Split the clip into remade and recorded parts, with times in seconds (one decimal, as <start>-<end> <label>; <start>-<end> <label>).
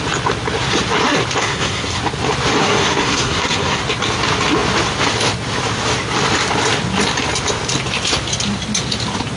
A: 0.0-1.4 recorded; 1.4-2.0 remade; 2.0-2.6 recorded; 2.6-3.8 remade; 3.8-9.4 recorded